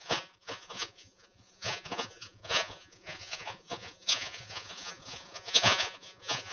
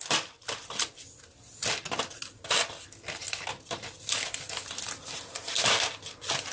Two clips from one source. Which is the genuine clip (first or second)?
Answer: second